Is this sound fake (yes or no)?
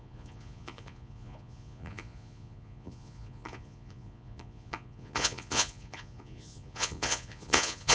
yes